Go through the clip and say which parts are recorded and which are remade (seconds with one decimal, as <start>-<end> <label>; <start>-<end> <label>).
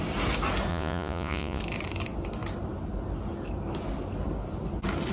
0.0-0.7 recorded; 0.7-1.6 remade; 1.6-5.1 recorded